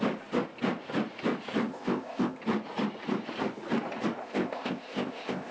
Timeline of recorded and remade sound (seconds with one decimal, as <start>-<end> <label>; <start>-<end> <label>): 0.0-1.7 recorded; 1.7-2.4 remade; 2.4-4.2 recorded; 4.2-5.5 remade